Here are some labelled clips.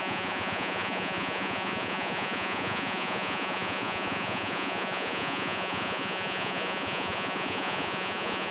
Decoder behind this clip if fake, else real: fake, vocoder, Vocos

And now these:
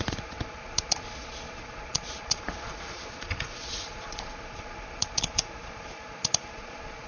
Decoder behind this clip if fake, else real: fake, vocoder, Vocos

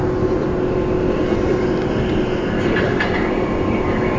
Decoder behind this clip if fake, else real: real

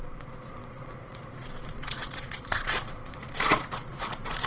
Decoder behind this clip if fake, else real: fake, vocoder, Vocos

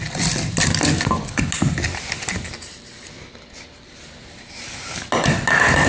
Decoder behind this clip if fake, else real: real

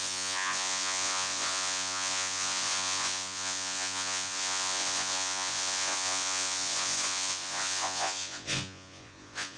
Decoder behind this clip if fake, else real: fake, vocoder, Vocos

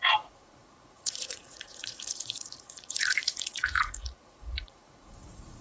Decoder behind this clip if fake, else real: fake, vocoder, Vocos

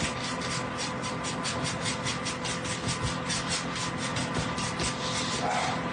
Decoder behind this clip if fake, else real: real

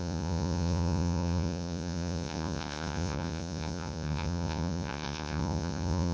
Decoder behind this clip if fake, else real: fake, vocoder, Vocos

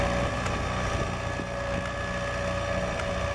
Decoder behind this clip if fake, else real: real